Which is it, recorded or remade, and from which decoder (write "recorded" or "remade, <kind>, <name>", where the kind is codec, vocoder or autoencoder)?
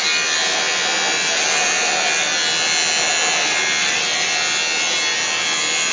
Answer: recorded